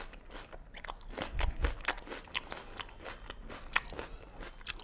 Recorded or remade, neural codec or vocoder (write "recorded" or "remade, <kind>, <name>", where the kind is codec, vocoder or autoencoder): recorded